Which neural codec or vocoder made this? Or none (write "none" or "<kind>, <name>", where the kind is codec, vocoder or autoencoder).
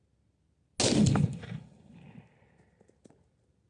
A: none